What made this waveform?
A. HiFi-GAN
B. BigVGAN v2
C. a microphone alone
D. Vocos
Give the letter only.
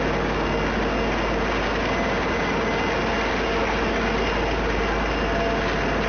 C